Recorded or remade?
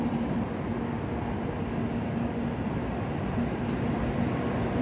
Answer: recorded